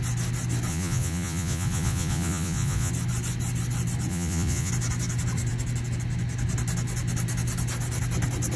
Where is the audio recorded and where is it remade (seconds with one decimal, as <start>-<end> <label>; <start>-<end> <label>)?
0.0-0.7 recorded; 0.7-2.9 remade; 2.9-4.1 recorded; 4.1-4.7 remade; 4.7-8.6 recorded